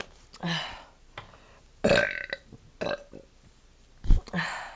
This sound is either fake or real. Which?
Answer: real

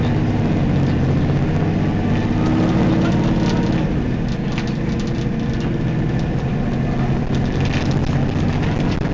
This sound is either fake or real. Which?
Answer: real